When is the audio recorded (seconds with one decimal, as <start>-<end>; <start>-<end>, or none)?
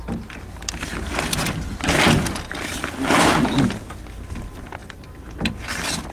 0.0-6.1